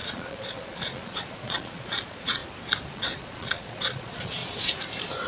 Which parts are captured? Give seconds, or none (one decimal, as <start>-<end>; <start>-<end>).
2.4-2.9; 4.4-5.3